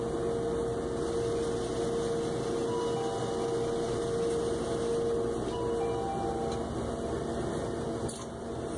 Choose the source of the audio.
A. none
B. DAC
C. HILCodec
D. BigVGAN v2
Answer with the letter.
A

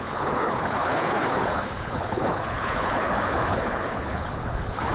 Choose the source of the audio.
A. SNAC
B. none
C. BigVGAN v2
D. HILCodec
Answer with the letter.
D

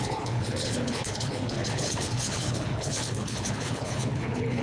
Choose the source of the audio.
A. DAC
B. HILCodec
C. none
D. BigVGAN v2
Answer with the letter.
B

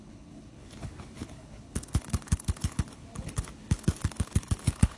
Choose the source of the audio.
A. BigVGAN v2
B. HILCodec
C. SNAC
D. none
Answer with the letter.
B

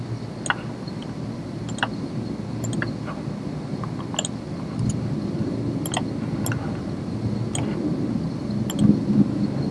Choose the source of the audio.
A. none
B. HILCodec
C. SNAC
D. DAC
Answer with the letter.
A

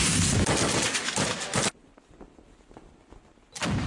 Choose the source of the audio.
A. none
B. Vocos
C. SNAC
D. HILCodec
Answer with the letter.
A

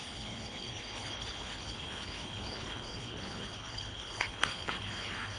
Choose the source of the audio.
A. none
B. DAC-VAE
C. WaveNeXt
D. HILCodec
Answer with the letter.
D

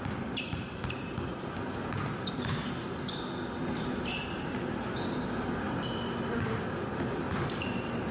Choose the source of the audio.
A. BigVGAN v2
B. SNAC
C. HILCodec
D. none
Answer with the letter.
D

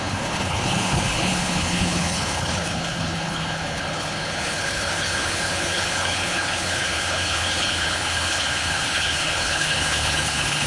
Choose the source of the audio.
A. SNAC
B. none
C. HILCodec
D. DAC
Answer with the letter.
C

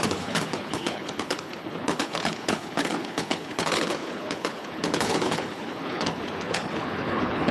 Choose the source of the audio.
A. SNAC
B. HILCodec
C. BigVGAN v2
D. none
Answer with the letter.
B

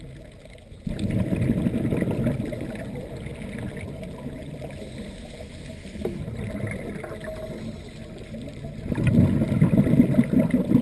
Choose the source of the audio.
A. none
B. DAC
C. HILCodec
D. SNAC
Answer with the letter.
A